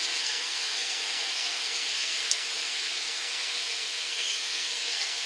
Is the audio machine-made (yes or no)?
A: yes